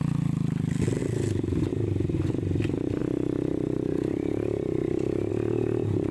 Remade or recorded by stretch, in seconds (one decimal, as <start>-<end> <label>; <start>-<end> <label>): 0.0-3.0 recorded; 3.0-5.3 remade; 5.3-6.1 recorded